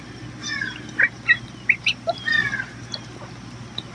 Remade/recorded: recorded